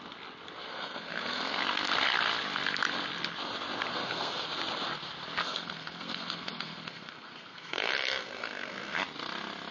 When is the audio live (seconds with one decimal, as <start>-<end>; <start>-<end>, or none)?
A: 0.0-0.7; 1.6-3.9; 4.5-5.4; 9.0-9.7